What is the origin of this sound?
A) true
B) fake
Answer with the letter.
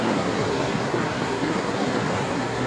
B